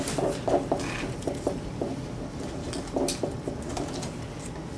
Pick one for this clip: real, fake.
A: real